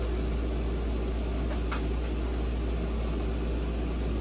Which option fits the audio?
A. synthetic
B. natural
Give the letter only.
B